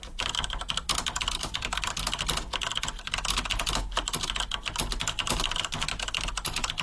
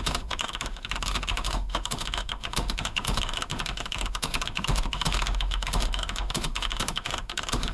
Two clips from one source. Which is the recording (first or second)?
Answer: first